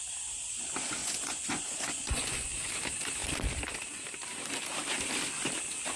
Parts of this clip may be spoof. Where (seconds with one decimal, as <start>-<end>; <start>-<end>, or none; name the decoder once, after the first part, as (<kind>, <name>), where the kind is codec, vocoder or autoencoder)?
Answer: 1.0-2.7 (vocoder, Vocos)